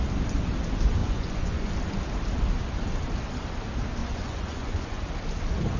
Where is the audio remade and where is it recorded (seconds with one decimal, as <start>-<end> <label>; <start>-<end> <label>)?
0.0-1.0 recorded; 1.0-1.7 remade; 1.7-4.0 recorded; 4.0-5.0 remade; 5.0-5.8 recorded